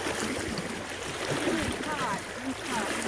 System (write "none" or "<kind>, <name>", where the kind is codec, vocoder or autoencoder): none